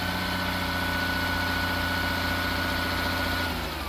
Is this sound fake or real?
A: real